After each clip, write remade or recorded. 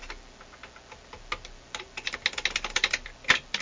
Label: recorded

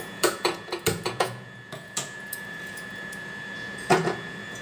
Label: remade